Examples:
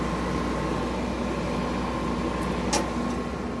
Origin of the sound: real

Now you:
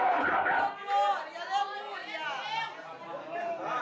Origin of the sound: real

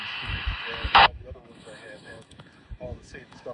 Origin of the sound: fake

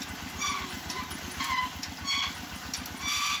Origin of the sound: real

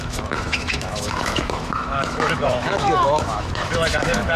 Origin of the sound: fake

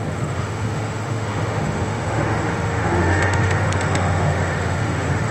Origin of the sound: fake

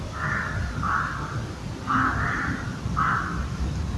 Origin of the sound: real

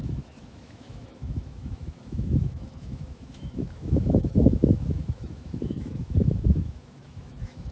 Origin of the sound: fake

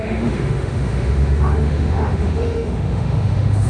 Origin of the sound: fake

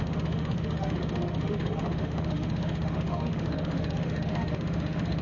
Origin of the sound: fake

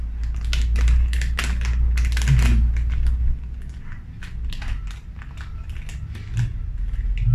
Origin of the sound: real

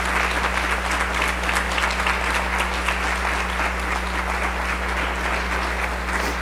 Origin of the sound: real